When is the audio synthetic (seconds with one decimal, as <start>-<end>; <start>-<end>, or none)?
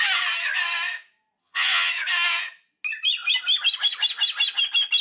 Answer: 1.4-1.9